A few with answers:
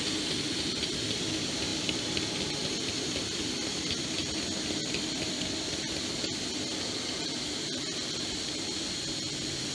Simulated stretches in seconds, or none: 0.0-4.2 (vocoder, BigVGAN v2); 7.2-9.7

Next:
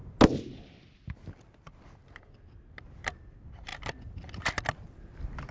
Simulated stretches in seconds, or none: none

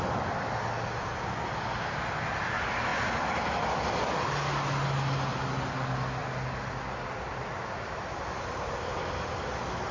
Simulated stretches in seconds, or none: none

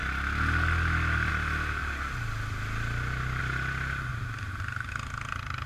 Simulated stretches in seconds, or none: 4.1-4.9 (vocoder, BigVGAN v2)

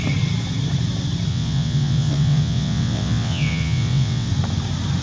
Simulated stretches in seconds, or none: 1.3-4.3 (vocoder, WaveNeXt)

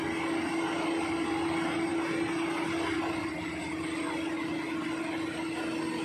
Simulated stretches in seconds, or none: none

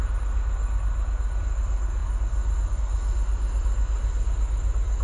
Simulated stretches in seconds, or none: none

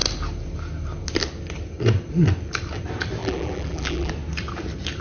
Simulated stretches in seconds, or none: 3.2-4.1 (vocoder, BigVGAN v2)